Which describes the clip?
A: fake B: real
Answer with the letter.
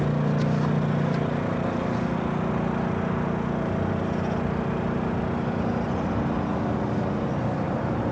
B